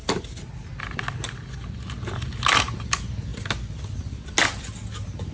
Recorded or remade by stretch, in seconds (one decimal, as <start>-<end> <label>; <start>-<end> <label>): 0.0-5.3 recorded